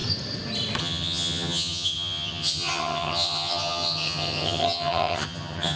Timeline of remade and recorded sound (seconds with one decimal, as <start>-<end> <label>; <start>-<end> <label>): 0.0-0.8 recorded; 0.8-5.8 remade